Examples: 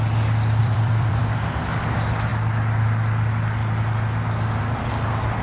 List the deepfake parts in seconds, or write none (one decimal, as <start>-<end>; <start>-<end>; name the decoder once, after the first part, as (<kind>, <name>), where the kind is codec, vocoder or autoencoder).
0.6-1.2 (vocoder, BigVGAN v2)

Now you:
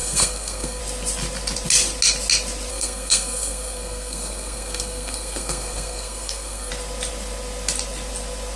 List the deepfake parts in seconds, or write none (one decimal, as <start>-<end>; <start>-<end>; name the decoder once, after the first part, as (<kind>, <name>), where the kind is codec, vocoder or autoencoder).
0.0-0.8 (codec, SNAC); 2.7-6.7

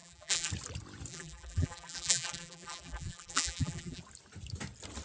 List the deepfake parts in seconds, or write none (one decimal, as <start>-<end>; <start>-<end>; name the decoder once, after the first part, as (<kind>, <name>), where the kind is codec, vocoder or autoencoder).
0.0-0.5 (vocoder, BigVGAN v2); 1.1-4.0